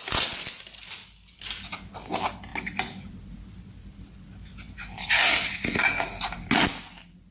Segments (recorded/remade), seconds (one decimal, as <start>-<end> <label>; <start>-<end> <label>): 0.0-7.3 recorded